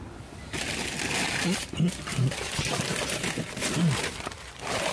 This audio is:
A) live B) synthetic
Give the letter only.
A